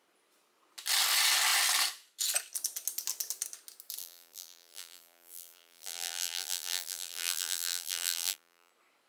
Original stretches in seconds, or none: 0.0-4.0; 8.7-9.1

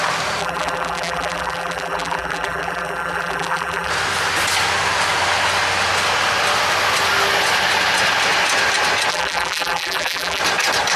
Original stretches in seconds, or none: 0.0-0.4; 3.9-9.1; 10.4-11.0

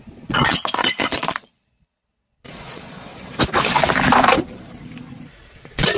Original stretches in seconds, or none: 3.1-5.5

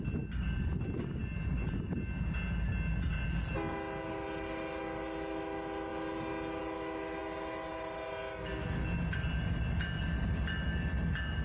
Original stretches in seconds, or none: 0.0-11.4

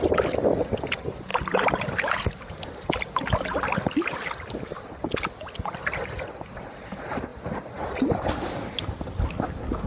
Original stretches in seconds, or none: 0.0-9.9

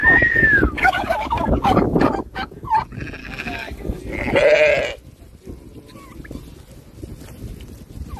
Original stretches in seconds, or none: 2.7-3.2; 4.0-8.2